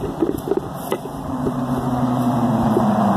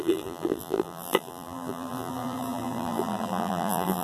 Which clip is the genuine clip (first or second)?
first